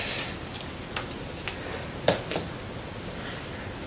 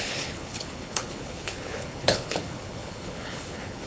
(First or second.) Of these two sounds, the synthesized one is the second